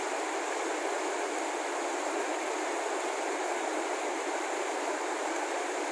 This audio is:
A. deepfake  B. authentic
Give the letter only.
B